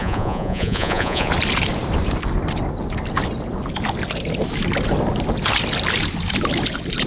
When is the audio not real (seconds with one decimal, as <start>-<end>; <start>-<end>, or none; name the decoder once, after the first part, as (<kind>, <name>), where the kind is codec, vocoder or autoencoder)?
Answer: 0.0-1.3 (vocoder, Vocos)